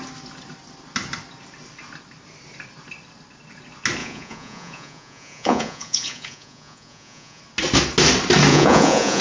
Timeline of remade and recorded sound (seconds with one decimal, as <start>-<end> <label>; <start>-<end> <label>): 0.0-4.0 recorded; 4.0-7.4 remade; 7.4-8.5 recorded; 8.5-9.2 remade